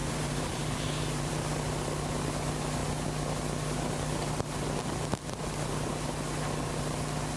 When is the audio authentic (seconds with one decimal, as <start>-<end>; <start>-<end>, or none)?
1.3-7.4